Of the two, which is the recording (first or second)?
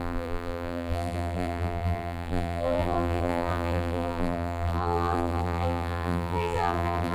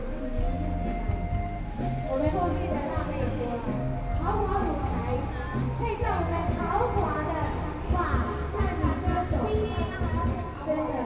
second